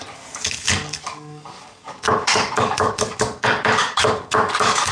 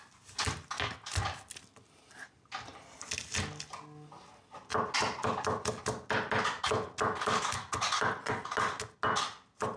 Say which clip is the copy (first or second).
first